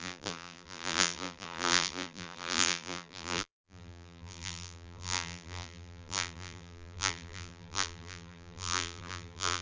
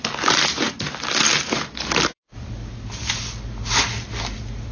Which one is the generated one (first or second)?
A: first